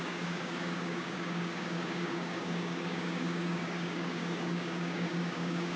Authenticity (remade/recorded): remade